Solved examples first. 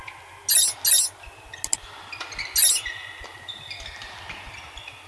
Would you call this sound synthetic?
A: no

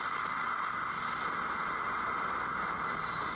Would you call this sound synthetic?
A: no